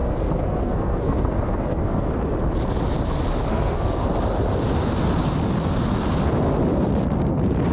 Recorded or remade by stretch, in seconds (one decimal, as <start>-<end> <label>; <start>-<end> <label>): 0.0-2.1 remade; 2.1-3.5 recorded; 3.5-4.1 remade; 4.1-7.7 recorded